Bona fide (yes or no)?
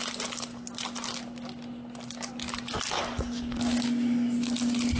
yes